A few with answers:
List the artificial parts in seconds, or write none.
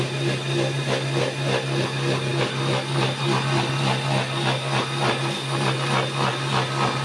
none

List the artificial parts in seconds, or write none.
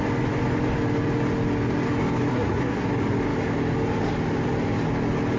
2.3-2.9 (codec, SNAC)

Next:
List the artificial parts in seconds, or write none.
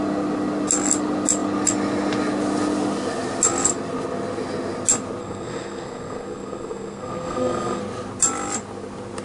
5.2-7.8 (codec, SNAC)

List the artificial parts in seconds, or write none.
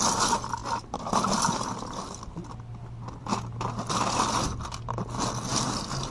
none